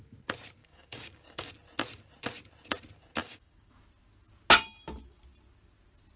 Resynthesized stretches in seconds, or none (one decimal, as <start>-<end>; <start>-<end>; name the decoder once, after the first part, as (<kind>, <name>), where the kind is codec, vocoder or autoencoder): 0.6-1.5 (codec, DAC); 3.2-3.7